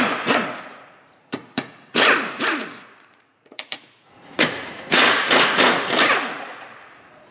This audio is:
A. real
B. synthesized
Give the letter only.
B